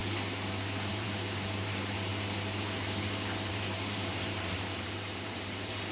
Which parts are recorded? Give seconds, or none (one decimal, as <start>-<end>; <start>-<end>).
0.0-0.9; 2.1-3.5